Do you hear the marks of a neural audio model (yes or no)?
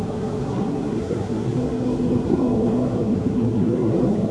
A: yes